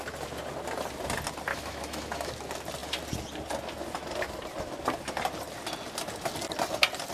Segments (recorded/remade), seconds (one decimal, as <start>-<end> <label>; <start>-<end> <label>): 0.0-1.5 recorded; 1.5-2.3 remade; 2.3-7.1 recorded